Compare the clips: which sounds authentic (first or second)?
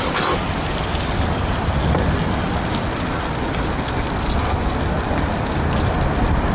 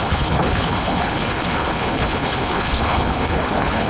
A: first